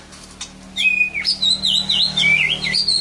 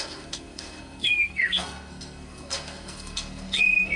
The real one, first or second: first